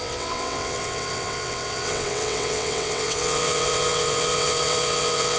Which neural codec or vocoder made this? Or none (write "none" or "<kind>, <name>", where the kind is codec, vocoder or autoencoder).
vocoder, WaveNeXt